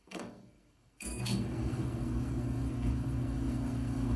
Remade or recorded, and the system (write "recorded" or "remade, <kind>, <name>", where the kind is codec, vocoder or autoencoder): remade, codec, SNAC